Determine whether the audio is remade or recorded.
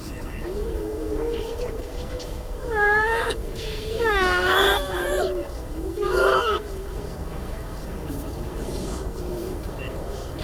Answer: remade